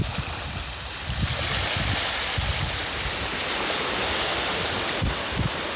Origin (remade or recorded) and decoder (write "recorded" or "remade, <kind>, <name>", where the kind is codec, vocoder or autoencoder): recorded